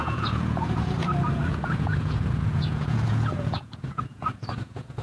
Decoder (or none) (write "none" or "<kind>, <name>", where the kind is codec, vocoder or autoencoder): vocoder, Vocos